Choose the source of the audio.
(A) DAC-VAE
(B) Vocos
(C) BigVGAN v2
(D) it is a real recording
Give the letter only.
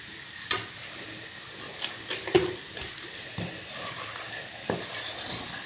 D